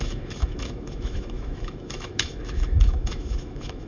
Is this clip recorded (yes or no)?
no